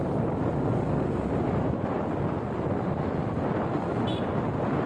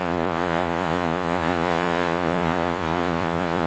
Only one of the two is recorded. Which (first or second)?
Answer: first